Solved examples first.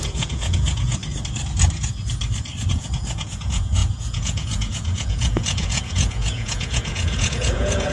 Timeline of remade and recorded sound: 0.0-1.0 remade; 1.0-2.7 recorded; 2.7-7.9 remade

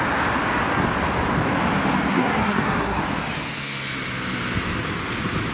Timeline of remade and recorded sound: 0.0-2.1 recorded; 2.1-3.0 remade; 3.0-5.5 recorded

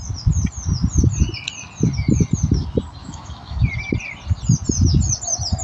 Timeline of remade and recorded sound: 0.0-3.0 recorded; 3.0-3.6 remade; 3.6-5.6 recorded